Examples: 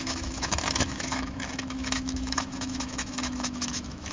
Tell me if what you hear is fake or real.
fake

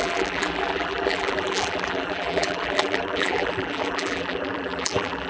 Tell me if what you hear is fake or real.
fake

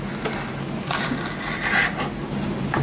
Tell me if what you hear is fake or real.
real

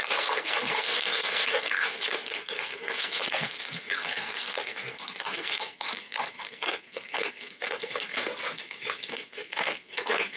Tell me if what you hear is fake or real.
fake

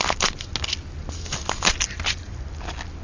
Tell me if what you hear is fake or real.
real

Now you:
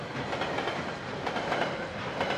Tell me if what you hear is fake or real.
real